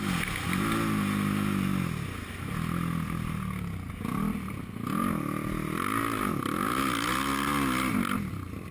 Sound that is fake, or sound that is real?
real